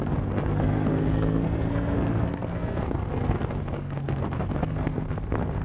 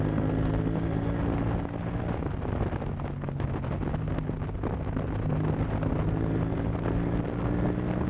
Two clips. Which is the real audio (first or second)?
second